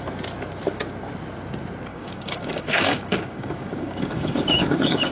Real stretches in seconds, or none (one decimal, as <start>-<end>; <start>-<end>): 0.0-1.9